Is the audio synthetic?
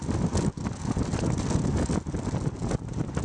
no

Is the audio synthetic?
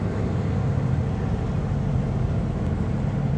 no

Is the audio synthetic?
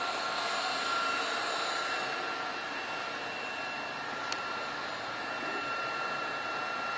no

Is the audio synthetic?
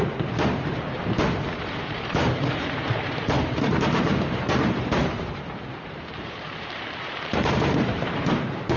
yes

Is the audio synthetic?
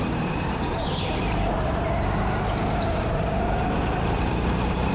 yes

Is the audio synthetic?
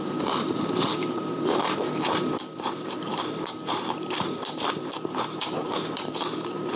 yes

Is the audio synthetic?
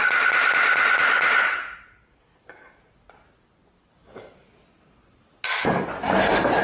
no